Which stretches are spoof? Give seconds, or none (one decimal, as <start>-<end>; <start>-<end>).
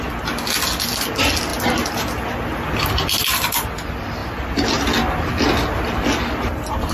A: none